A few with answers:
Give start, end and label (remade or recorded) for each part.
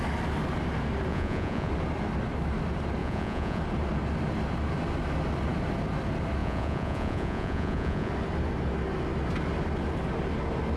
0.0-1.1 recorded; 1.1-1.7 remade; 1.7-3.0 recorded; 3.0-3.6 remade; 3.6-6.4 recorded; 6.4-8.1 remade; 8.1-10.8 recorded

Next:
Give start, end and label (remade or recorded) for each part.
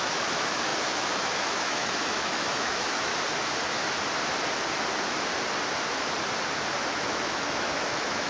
0.0-3.1 remade; 3.1-6.9 recorded; 6.9-8.3 remade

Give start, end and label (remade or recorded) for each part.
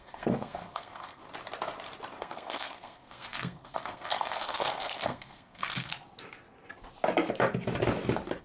0.0-1.2 remade; 1.2-2.2 recorded; 2.2-5.9 remade; 5.9-8.4 recorded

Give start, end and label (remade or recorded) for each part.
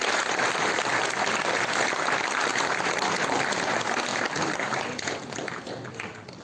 0.0-0.9 remade; 0.9-2.5 recorded; 2.5-3.3 remade; 3.3-4.1 recorded; 4.1-4.8 remade; 4.8-6.4 recorded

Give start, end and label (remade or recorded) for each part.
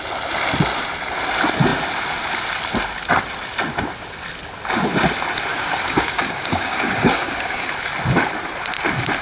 0.0-5.5 recorded; 5.5-7.7 remade; 7.7-9.2 recorded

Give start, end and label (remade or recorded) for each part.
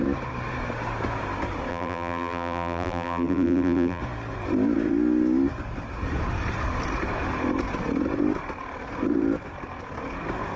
0.0-1.7 recorded; 1.7-4.0 remade; 4.0-10.6 recorded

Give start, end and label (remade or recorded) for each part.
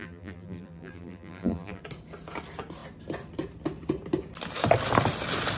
0.0-1.8 remade; 1.8-5.6 recorded